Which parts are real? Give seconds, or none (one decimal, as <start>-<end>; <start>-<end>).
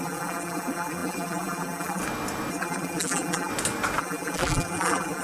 2.0-2.5; 3.5-4.0